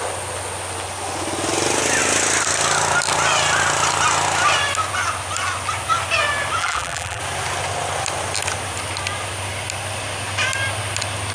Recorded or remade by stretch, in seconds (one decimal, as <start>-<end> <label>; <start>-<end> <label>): 0.0-6.6 recorded; 6.6-7.2 remade; 7.2-11.3 recorded